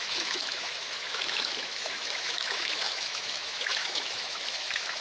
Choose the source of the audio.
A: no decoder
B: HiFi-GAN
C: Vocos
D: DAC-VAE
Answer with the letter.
D